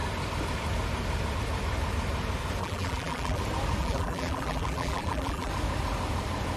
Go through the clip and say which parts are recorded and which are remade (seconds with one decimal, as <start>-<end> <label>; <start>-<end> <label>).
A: 0.0-2.6 recorded; 2.6-3.4 remade; 3.4-3.8 recorded; 3.8-5.5 remade; 5.5-6.6 recorded